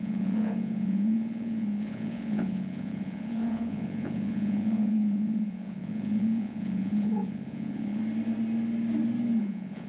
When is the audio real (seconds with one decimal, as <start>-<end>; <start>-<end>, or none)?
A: 8.0-9.4